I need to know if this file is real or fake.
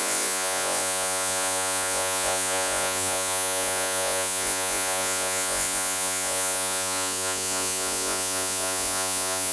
fake